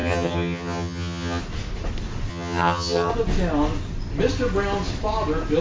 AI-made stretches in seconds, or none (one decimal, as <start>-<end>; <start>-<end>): 0.0-1.4; 2.3-3.1